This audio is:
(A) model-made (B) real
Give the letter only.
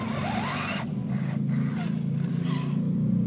B